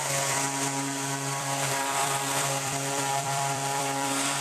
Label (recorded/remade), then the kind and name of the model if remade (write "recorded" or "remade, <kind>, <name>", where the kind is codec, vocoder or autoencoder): remade, vocoder, BigVGAN v2